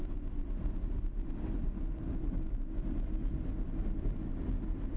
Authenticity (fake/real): fake